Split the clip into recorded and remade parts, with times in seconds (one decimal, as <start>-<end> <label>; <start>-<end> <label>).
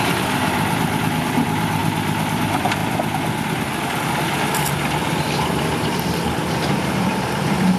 0.0-1.8 remade; 1.8-2.4 recorded; 2.4-7.8 remade